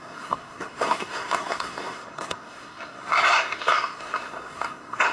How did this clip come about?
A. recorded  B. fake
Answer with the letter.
B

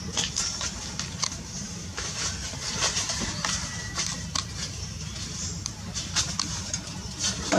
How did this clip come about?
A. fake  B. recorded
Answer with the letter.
A